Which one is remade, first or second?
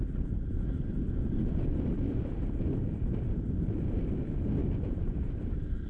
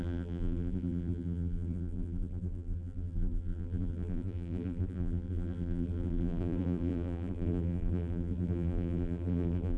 second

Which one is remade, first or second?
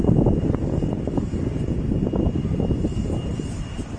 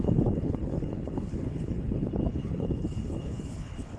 second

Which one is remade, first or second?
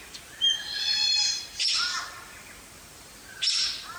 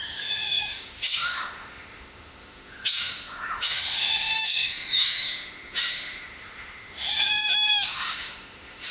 second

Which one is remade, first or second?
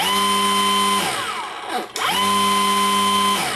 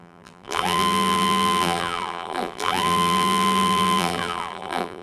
second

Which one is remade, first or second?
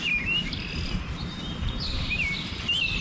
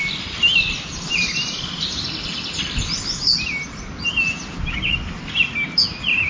first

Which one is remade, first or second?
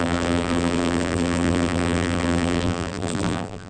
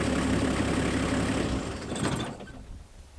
first